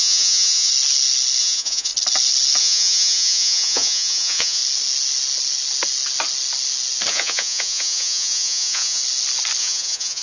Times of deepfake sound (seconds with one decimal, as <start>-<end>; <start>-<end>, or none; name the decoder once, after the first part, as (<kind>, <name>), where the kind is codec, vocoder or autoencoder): 0.0-0.7 (vocoder, Vocos); 1.4-1.9; 2.6-4.6; 7.1-9.0; 9.6-10.2